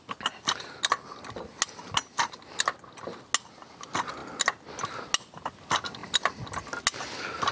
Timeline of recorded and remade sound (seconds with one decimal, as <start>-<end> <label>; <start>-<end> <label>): 0.0-7.5 recorded